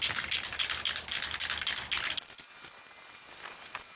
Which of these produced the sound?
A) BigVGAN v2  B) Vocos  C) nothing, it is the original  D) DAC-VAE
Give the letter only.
C